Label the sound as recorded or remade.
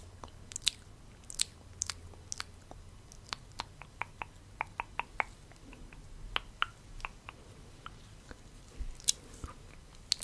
recorded